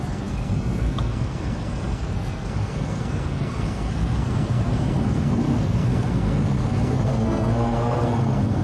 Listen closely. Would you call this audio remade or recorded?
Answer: remade